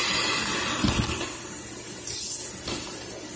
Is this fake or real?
real